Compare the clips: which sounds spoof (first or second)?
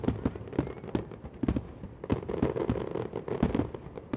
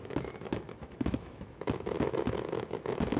second